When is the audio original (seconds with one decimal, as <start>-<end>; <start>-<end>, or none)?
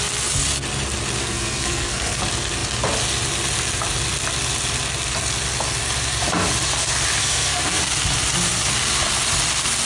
0.0-1.2; 2.2-7.2; 7.8-9.8